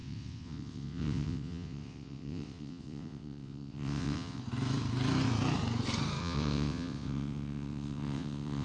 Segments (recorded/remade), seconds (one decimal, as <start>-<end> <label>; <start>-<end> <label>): 0.0-4.4 remade; 4.4-6.2 recorded; 6.2-8.6 remade